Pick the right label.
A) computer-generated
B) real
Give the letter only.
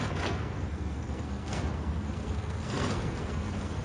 A